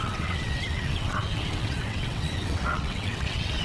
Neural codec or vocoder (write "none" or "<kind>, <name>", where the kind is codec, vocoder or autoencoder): vocoder, WaveNeXt